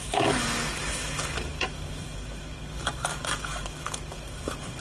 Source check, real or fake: fake